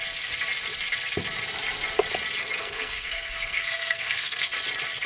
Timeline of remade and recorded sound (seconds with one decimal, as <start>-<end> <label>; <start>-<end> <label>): 0.0-2.6 recorded; 2.6-4.5 remade; 4.5-5.1 recorded